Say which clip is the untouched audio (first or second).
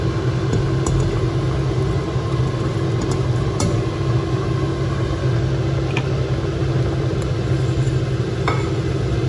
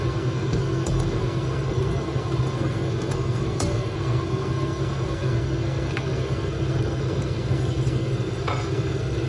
first